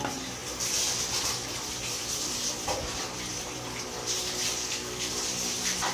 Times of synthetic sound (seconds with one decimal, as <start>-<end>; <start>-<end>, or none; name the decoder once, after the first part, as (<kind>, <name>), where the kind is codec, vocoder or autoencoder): 4.6-5.1 (codec, SNAC)